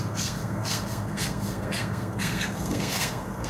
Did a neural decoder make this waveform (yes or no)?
yes